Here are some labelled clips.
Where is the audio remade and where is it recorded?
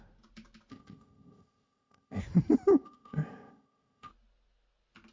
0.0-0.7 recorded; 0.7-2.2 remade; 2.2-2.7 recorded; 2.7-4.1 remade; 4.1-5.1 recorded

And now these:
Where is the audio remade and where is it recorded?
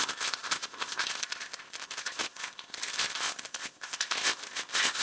0.0-5.0 remade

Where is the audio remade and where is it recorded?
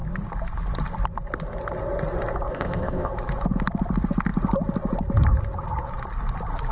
0.0-2.5 recorded; 2.5-3.1 remade; 3.1-6.7 recorded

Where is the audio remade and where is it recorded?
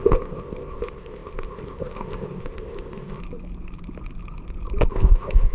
0.0-3.2 remade; 3.2-4.9 recorded; 4.9-5.5 remade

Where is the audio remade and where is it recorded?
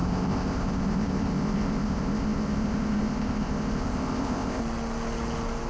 0.0-4.6 remade; 4.6-5.7 recorded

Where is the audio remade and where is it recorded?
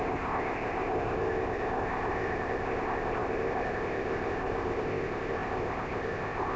0.0-6.6 remade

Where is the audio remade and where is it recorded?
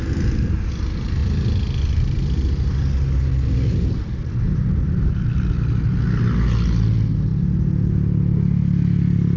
0.0-9.4 recorded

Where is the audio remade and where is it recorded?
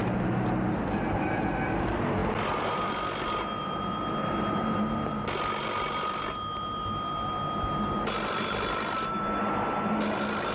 0.0-10.5 recorded